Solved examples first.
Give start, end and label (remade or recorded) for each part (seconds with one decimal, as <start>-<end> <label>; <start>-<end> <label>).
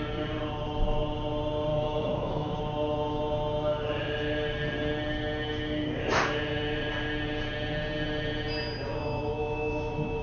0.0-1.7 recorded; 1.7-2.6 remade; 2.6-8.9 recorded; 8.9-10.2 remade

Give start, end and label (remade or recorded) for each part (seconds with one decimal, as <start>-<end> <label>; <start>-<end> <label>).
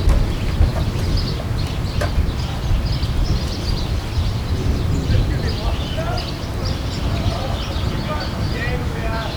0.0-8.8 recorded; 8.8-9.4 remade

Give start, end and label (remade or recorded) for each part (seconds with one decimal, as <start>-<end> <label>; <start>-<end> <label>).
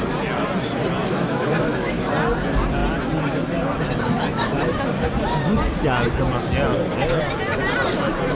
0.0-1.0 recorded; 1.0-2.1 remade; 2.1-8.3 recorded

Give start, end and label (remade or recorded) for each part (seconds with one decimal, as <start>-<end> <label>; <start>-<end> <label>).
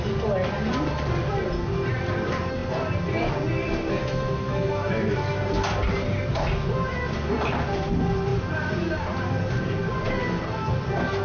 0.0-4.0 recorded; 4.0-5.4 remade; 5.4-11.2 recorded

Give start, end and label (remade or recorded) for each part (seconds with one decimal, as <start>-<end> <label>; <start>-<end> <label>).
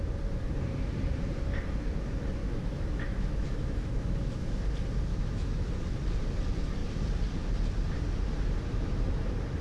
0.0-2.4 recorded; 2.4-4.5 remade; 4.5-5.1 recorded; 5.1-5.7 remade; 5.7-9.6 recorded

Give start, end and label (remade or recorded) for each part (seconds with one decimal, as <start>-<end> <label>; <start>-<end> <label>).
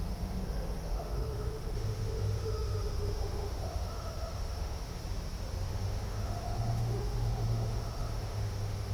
0.0-5.0 remade; 5.0-5.7 recorded; 5.7-8.9 remade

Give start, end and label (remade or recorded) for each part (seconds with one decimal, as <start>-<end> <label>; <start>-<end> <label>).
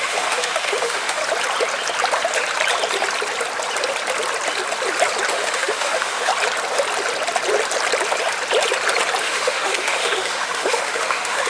0.0-1.2 remade; 1.2-5.3 recorded; 5.3-6.3 remade; 6.3-9.2 recorded; 9.2-11.5 remade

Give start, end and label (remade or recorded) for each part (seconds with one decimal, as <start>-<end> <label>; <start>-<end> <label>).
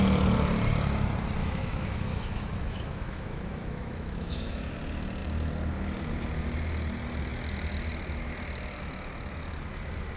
0.0-1.4 recorded; 1.4-4.7 remade; 4.7-10.2 recorded